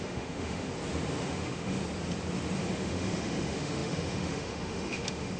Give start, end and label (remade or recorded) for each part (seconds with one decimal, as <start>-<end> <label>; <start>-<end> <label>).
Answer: 0.0-0.7 remade; 0.7-1.3 recorded; 1.3-1.8 remade; 1.8-2.7 recorded; 2.7-5.4 remade